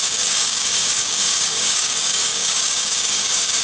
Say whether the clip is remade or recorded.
remade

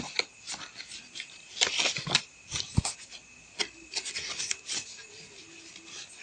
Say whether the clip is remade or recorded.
recorded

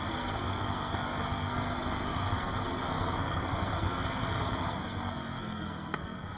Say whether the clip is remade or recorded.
remade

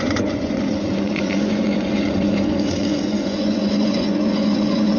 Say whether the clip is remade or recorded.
remade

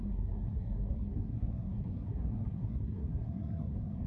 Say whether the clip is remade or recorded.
remade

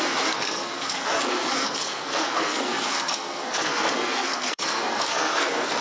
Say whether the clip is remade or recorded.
remade